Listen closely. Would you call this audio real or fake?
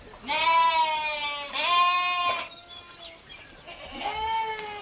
real